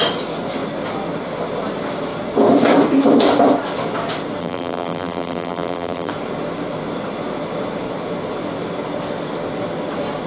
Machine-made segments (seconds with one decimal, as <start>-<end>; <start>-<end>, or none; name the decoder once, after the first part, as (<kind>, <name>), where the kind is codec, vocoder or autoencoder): 4.4-6.1 (vocoder, BigVGAN v2)